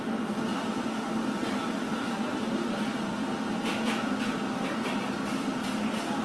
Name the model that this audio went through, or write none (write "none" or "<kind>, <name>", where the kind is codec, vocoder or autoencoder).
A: none